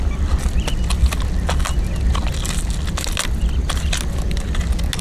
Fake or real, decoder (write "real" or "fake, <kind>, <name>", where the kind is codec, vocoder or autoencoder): real